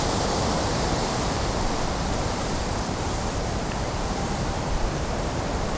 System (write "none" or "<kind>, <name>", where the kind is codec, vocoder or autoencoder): vocoder, BigVGAN v2